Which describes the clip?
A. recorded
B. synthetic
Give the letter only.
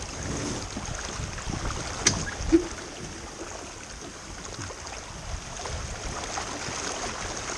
A